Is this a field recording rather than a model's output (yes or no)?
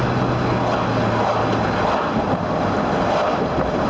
yes